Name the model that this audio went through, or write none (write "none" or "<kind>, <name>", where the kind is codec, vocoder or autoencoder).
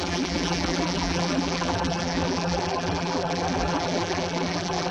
vocoder, BigVGAN v2